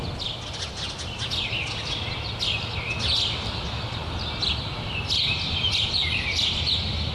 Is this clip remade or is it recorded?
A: recorded